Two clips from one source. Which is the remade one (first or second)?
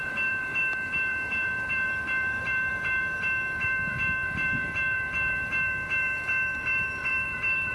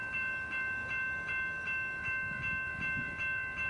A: first